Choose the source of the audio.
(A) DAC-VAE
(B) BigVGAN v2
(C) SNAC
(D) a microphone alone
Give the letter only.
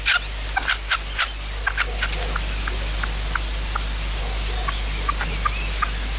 D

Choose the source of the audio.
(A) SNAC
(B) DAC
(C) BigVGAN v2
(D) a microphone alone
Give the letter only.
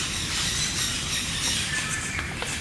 D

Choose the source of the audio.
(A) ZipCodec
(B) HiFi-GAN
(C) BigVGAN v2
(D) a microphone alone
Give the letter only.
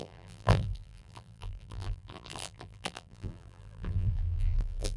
C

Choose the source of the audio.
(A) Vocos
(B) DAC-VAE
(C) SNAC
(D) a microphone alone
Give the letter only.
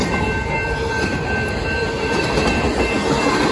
D